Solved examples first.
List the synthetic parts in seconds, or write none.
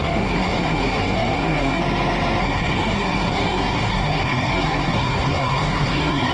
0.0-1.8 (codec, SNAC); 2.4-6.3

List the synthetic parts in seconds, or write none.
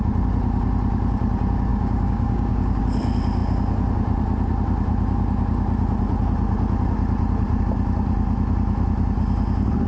1.7-2.8 (codec, DAC)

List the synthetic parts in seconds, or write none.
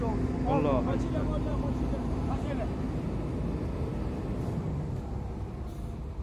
1.5-2.5 (vocoder, BigVGAN v2)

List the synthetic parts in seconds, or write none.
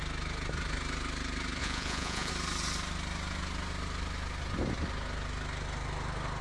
1.6-2.3 (vocoder, Vocos)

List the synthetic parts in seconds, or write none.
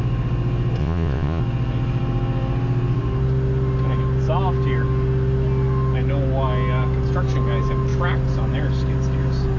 0.8-1.4 (vocoder, Vocos)